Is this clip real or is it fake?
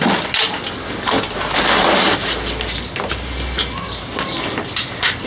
real